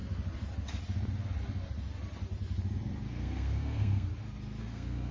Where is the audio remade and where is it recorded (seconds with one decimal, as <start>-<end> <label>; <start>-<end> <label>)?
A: 0.0-3.1 recorded; 3.1-4.1 remade; 4.1-4.6 recorded; 4.6-5.1 remade